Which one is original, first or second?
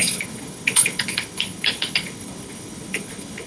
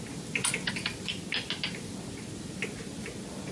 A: second